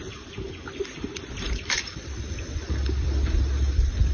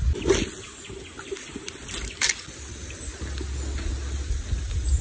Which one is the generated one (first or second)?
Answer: first